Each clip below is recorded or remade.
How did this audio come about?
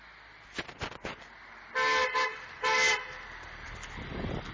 recorded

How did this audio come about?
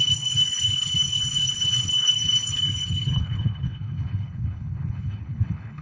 remade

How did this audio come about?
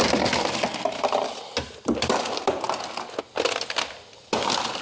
remade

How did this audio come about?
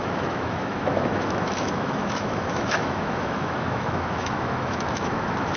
remade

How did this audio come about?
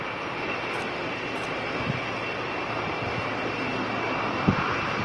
recorded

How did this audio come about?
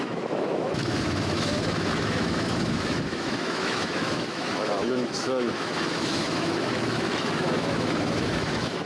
remade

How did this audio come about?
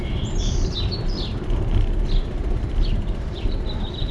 remade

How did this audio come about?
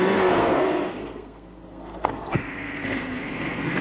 remade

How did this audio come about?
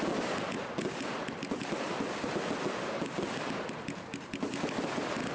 recorded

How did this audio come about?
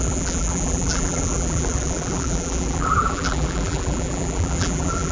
remade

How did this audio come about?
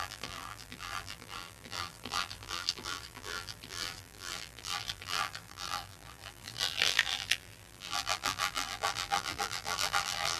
remade